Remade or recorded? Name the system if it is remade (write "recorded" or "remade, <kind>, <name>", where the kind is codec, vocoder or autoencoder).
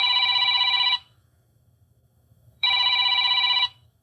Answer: remade, autoencoder, DAC-VAE